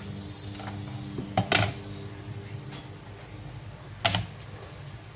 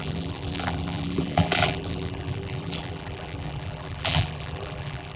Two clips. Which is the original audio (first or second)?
first